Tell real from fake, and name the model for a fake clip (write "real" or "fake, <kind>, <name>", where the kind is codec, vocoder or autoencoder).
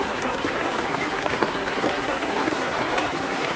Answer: fake, codec, SNAC